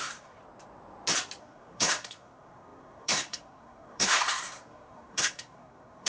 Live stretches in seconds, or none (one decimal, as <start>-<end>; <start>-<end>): 0.4-1.4